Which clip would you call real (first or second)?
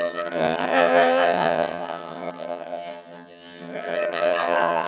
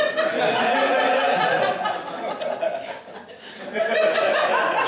second